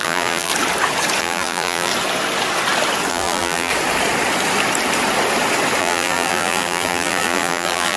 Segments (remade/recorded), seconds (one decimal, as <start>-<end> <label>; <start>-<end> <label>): 0.0-0.5 remade; 0.5-1.2 recorded; 1.2-1.9 remade; 1.9-3.1 recorded; 3.1-3.7 remade; 3.7-5.8 recorded; 5.8-8.0 remade